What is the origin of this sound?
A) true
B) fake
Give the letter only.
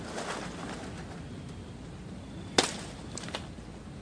A